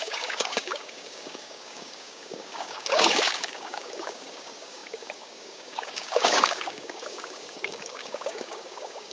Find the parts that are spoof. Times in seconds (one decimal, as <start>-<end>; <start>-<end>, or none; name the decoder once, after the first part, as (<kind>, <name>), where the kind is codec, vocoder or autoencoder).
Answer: 0.0-9.1 (codec, DAC)